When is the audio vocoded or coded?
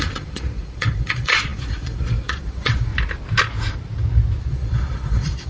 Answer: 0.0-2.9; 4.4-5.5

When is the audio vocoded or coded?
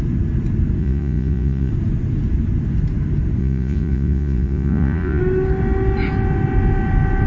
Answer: 0.8-1.7; 3.4-5.2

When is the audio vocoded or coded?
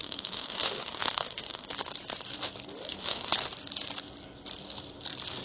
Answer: 0.0-1.7; 2.7-3.3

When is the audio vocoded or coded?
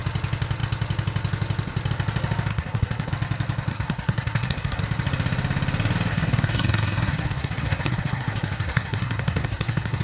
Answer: 2.5-3.1; 3.7-4.8; 6.1-10.0